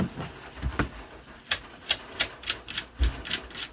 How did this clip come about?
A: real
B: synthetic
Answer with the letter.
A